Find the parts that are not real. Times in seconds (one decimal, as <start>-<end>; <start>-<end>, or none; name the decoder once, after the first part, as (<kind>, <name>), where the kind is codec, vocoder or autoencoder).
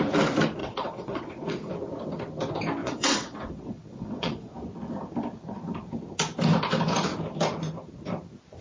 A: 0.6-1.7 (vocoder, WaveNeXt); 2.8-4.5